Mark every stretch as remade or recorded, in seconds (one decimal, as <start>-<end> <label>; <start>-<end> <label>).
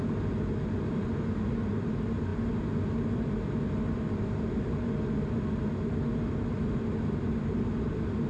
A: 0.0-8.3 recorded